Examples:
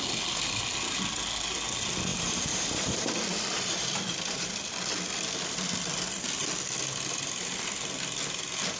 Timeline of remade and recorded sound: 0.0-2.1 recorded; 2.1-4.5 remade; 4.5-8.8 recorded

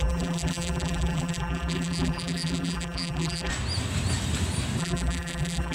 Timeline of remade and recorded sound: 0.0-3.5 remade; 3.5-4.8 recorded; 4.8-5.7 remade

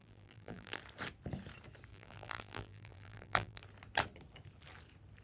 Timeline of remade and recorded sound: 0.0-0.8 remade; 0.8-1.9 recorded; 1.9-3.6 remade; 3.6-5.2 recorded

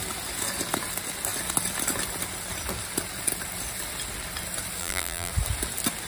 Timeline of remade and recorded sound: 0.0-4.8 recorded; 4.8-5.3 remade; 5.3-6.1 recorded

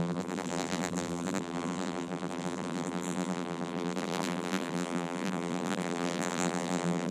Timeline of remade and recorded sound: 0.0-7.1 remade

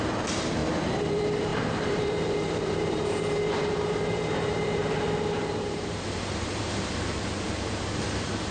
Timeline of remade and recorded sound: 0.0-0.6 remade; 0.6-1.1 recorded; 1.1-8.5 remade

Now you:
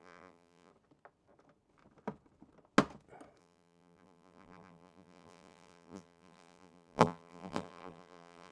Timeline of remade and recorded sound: 0.0-0.7 remade; 0.7-3.4 recorded; 3.4-8.5 remade